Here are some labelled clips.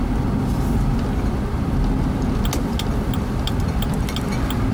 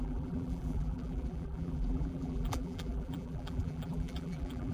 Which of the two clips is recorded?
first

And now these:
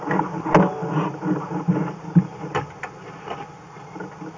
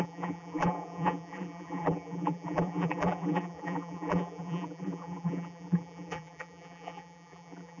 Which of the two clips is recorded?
first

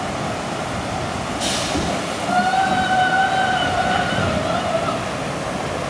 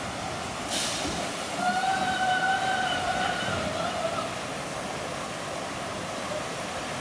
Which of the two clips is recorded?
first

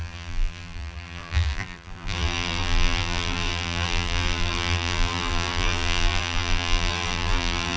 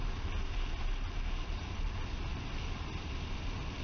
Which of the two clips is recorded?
second